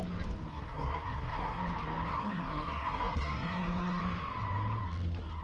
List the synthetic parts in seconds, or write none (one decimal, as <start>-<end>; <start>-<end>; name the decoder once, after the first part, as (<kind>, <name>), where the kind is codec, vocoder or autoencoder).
0.5-1.6 (codec, SNAC); 2.1-4.0